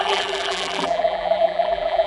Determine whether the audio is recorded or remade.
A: remade